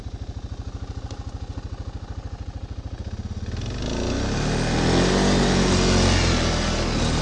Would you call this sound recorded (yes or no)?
yes